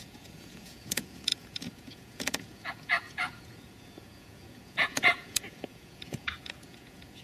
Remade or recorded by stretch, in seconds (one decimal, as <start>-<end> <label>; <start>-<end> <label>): 0.0-7.2 remade